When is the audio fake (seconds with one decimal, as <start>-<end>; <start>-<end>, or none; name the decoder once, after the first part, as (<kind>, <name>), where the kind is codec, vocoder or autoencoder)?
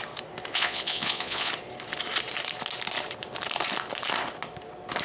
0.5-1.5 (vocoder, Vocos)